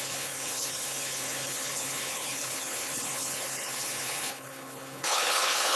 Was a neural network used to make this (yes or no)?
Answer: yes